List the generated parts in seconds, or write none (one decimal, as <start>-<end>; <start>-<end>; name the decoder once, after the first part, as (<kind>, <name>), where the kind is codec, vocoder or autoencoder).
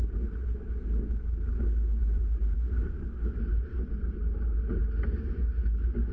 2.0-3.9 (vocoder, BigVGAN v2)